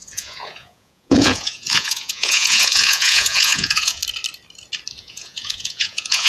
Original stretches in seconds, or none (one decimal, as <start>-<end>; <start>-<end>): 4.0-5.0